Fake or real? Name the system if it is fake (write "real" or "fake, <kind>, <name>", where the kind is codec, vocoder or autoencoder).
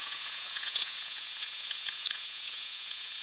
fake, vocoder, Vocos